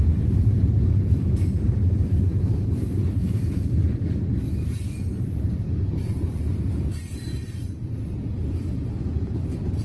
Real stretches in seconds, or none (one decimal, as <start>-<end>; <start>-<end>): 3.8-4.5